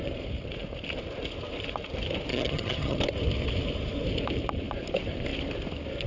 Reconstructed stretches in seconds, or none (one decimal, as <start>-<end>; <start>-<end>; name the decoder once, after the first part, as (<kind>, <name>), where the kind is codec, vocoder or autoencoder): 2.3-3.0 (vocoder, HiFi-GAN)